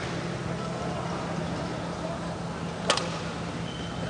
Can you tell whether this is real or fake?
real